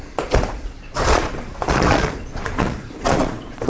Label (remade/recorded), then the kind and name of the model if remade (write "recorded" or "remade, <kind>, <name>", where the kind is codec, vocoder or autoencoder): remade, vocoder, Vocos